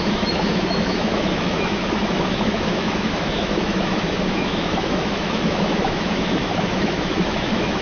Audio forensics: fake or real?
fake